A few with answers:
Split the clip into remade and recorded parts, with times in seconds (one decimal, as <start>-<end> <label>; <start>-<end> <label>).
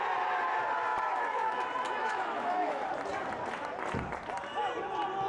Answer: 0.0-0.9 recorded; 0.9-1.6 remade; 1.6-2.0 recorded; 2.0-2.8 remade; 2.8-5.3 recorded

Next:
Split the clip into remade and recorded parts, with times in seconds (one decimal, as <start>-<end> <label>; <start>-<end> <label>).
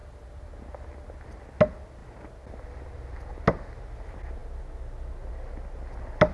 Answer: 0.0-6.3 recorded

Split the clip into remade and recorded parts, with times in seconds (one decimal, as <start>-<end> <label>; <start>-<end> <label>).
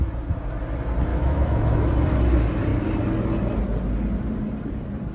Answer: 0.0-1.1 recorded; 1.1-1.8 remade; 1.8-5.1 recorded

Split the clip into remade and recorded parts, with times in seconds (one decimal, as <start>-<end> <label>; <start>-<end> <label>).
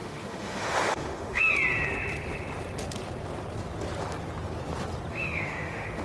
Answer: 0.0-1.5 remade; 1.5-5.1 recorded; 5.1-6.0 remade